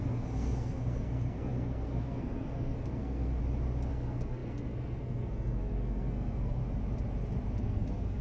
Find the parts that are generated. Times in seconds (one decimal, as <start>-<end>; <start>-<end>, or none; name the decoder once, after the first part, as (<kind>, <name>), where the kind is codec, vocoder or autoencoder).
0.0-3.4 (codec, SNAC); 3.9-6.6; 7.6-8.2